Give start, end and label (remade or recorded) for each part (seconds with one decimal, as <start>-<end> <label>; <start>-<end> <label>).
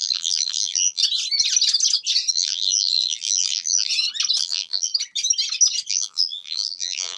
0.0-1.0 remade; 1.0-2.3 recorded; 2.3-3.9 remade; 3.9-4.4 recorded; 4.4-4.9 remade; 4.9-5.9 recorded; 5.9-7.2 remade